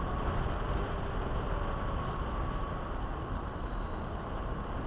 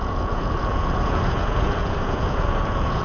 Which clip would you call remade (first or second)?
second